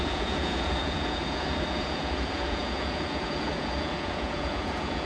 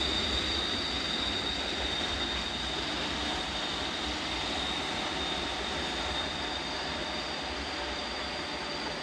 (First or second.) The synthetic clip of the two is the first